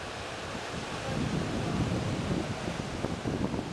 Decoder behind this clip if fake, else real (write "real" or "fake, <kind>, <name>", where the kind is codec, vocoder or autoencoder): real